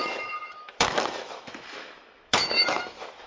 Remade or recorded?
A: remade